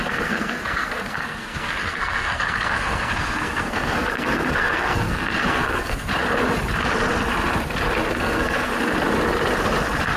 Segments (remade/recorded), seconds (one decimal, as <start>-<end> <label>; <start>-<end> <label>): 0.0-6.1 remade; 6.1-8.2 recorded; 8.2-8.7 remade; 8.7-10.2 recorded